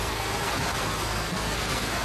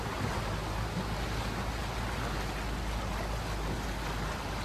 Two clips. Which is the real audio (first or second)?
second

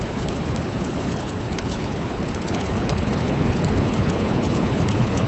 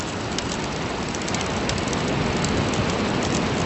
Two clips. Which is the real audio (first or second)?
second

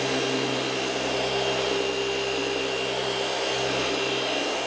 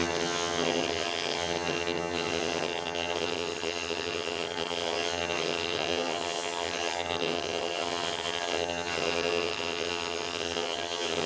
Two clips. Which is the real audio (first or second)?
first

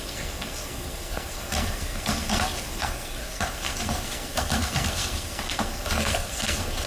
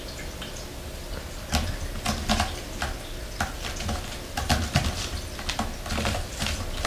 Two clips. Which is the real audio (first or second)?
second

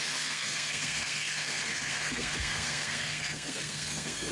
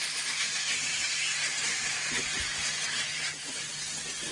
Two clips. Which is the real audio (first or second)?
second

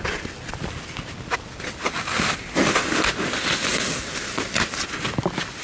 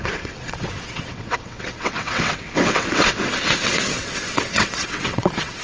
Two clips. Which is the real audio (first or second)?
first